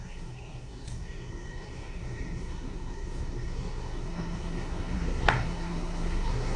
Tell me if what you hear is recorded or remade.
remade